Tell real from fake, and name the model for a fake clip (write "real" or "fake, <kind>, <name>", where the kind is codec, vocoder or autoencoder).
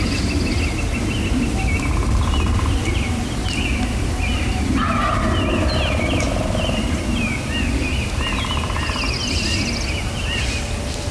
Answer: real